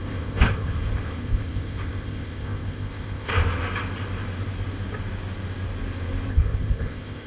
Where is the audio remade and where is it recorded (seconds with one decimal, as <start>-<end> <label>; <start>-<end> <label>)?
0.0-3.3 remade; 3.3-6.3 recorded; 6.3-7.3 remade

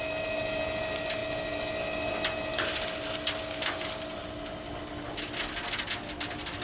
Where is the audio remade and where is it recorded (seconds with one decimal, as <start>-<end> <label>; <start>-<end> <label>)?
0.0-6.6 recorded

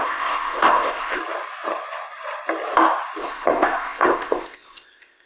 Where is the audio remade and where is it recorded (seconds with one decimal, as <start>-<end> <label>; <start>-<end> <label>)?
0.0-1.2 remade; 1.2-3.2 recorded; 3.2-5.3 remade

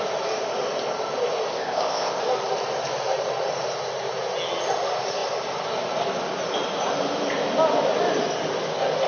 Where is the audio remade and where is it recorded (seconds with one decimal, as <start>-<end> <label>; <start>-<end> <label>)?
0.0-1.5 recorded; 1.5-2.2 remade; 2.2-9.1 recorded

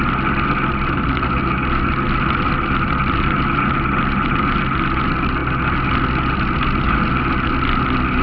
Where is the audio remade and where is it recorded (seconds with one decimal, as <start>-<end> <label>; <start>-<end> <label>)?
0.0-8.2 recorded

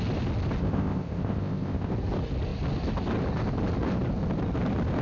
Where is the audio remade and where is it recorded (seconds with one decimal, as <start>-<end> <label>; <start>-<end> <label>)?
0.0-0.6 recorded; 0.6-1.9 remade; 1.9-5.0 recorded